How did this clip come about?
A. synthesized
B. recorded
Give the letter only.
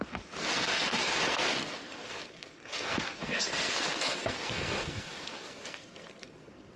A